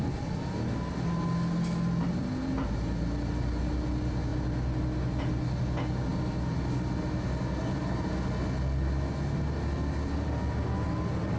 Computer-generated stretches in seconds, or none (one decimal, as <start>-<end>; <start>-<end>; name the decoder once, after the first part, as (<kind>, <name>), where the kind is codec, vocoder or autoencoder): none